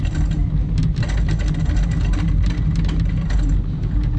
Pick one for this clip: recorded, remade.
recorded